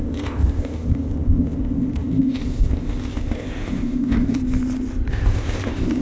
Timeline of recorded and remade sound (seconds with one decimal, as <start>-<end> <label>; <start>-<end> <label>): 0.0-4.4 remade; 4.4-5.1 recorded; 5.1-6.0 remade